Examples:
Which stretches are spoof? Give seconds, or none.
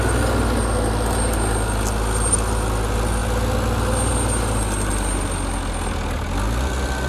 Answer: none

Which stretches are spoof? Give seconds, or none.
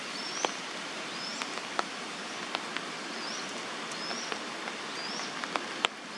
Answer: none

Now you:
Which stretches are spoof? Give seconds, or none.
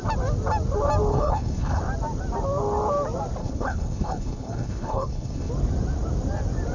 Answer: 1.1-1.8 (codec, HILCodec); 3.4-5.5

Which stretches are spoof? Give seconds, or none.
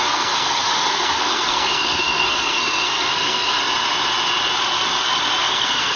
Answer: 0.0-3.6 (codec, SNAC); 5.4-6.0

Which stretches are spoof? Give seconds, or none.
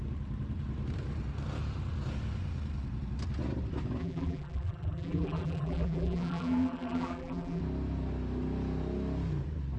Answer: 4.0-7.6 (vocoder, BigVGAN v2)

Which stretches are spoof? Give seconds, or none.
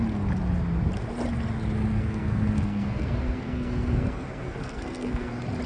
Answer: 1.9-5.3 (codec, SNAC)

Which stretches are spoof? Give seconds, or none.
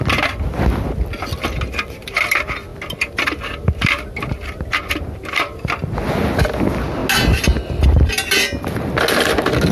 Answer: none